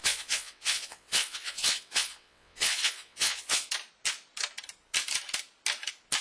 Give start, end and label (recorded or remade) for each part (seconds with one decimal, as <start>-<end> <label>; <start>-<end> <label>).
0.0-3.7 remade; 3.7-6.2 recorded